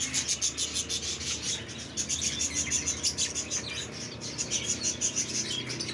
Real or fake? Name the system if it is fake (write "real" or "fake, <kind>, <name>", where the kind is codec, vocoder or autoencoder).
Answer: real